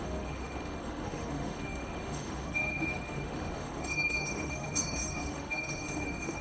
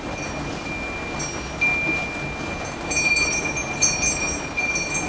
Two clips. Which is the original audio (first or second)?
second